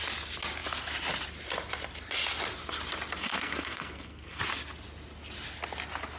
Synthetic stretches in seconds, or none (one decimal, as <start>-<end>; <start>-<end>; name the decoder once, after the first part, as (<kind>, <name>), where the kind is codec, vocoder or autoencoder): 3.2-4.4 (codec, SNAC)